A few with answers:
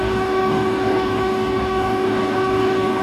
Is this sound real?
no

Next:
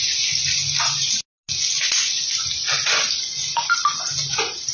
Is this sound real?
yes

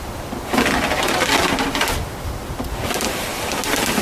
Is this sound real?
yes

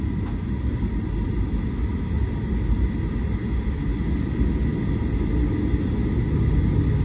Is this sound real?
yes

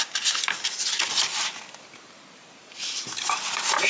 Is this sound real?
yes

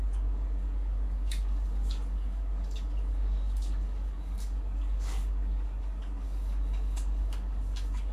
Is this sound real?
no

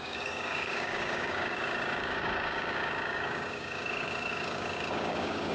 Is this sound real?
no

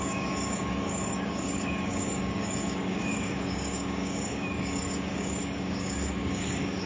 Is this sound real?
no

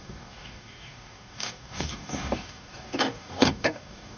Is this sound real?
no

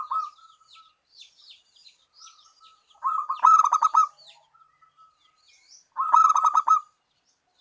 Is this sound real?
yes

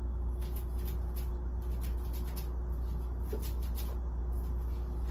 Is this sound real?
yes